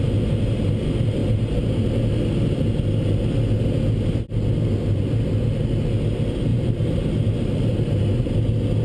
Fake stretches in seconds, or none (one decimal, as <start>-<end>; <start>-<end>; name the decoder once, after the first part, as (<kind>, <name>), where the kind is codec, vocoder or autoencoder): 6.5-8.3 (vocoder, BigVGAN v2)

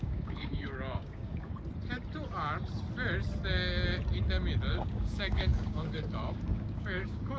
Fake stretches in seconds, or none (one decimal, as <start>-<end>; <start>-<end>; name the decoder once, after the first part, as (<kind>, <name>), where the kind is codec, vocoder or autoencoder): 0.0-1.5 (codec, DAC); 4.7-7.4

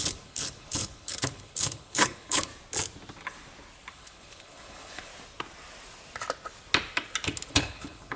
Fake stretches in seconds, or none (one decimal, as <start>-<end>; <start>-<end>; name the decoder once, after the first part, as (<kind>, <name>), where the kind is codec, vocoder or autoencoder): 0.0-2.5 (codec, HILCodec); 3.9-5.1; 7.5-8.2

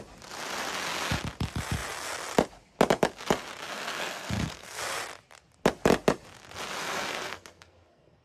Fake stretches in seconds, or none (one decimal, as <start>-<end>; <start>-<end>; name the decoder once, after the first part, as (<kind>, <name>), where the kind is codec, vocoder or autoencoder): 3.7-4.8 (codec, SNAC); 6.8-8.2

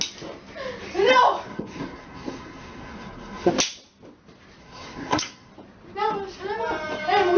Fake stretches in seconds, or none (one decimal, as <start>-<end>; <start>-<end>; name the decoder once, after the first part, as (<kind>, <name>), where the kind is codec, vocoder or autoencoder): 1.5-3.5 (codec, SNAC); 4.6-5.5

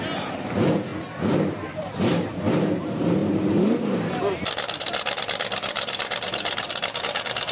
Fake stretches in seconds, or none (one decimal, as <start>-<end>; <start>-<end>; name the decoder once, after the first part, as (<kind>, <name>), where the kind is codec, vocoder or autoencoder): 0.0-0.9 (vocoder, BigVGAN v2); 1.7-7.5

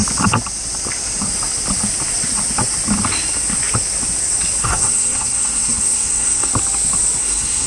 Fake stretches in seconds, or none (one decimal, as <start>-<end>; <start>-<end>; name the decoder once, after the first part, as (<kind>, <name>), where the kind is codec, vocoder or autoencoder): 4.6-6.5 (codec, SNAC); 7.2-7.7